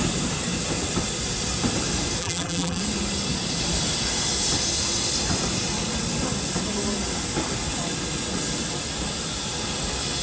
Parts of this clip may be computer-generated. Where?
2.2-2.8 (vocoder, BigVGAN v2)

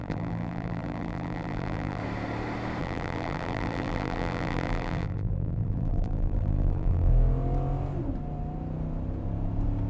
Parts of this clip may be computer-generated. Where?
0.0-2.0 (vocoder, BigVGAN v2); 2.8-7.1

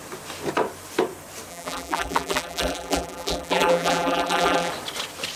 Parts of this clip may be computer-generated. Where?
1.5-4.7 (vocoder, BigVGAN v2)

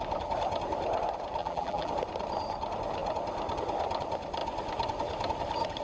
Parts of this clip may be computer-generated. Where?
1.4-1.9 (vocoder, BigVGAN v2)